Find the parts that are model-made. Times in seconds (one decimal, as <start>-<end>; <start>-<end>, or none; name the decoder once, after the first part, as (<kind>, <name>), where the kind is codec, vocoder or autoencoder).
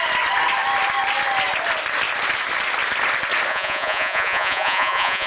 3.5-5.3 (vocoder, Vocos)